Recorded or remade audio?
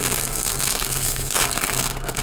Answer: remade